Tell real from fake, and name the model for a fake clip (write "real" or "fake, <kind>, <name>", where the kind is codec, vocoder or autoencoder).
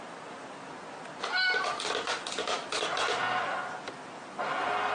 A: real